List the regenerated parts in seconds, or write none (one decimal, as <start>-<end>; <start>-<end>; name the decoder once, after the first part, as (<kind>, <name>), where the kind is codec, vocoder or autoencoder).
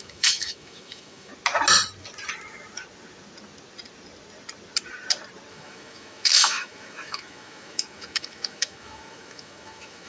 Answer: 0.0-1.3 (autoencoder, DAC-VAE); 5.5-10.1